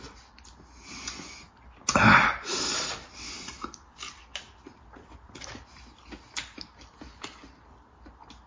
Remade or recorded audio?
recorded